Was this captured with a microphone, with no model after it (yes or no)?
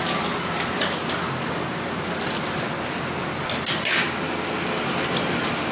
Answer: yes